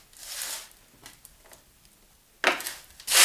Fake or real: real